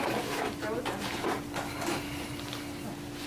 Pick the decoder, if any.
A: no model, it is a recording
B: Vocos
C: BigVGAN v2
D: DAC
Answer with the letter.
A